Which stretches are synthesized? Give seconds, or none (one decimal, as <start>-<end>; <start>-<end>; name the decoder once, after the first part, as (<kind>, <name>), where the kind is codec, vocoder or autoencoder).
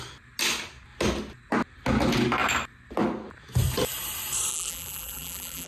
4.5-5.7 (vocoder, BigVGAN v2)